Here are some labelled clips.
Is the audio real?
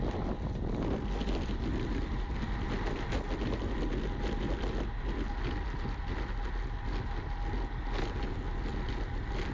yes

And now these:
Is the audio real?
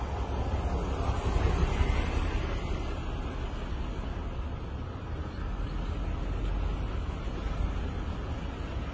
yes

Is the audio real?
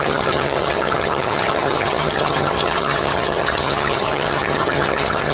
no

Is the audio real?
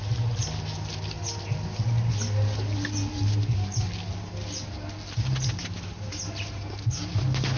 yes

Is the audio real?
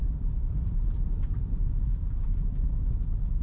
yes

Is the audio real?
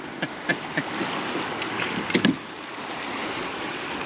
yes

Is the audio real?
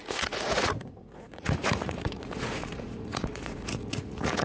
no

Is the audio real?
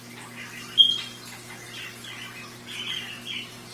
yes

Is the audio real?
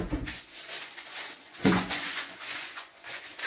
no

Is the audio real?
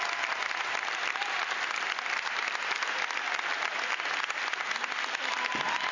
yes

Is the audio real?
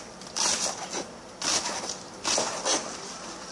yes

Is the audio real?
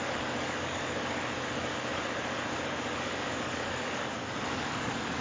no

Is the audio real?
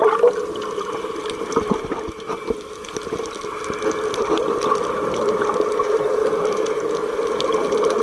yes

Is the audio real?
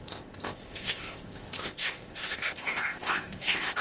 no